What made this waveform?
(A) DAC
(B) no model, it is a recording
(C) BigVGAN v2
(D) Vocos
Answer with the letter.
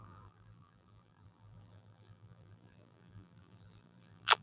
C